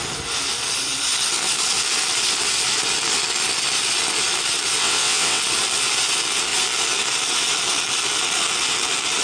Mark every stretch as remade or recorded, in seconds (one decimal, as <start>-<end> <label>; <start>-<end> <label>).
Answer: 0.0-4.8 recorded; 4.8-5.4 remade; 5.4-9.2 recorded